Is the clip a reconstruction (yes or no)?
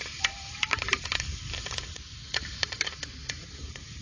yes